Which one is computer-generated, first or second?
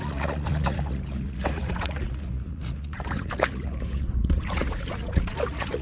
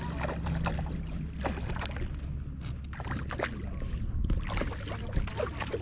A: first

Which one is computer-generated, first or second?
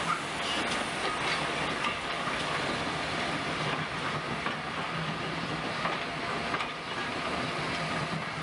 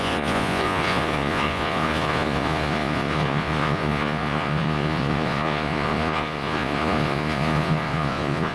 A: second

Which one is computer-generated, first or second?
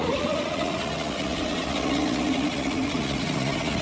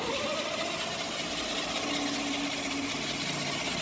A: first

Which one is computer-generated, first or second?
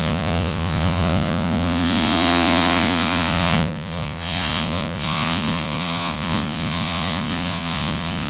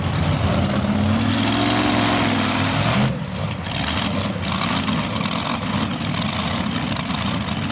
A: first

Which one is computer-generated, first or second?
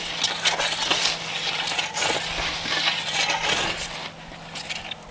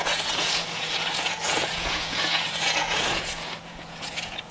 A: second